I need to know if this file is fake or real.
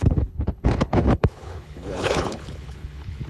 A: fake